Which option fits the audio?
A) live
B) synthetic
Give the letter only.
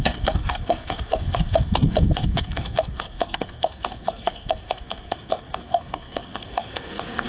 B